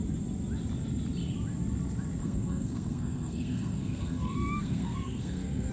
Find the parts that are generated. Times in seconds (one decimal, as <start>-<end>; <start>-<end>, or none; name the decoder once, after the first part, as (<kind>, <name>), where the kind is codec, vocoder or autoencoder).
2.2-5.7 (codec, SNAC)